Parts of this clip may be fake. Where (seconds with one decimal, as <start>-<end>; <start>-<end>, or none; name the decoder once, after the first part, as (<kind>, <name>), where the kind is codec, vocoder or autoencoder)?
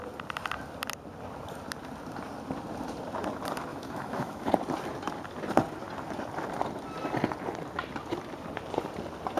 3.7-4.5 (autoencoder, DAC-VAE)